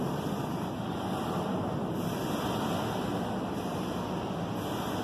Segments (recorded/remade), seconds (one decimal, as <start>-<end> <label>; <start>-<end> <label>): 0.0-5.0 recorded